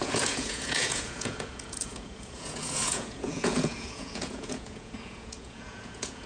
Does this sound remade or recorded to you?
remade